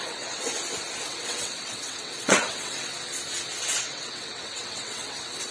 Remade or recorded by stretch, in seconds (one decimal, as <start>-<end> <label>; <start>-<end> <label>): 0.0-0.5 remade; 0.5-1.0 recorded; 1.0-2.9 remade; 2.9-3.7 recorded; 3.7-5.5 remade